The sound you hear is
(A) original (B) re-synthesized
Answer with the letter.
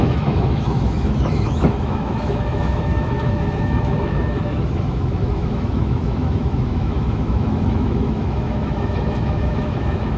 B